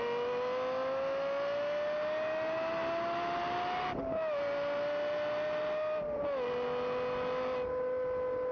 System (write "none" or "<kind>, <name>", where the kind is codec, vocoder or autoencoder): none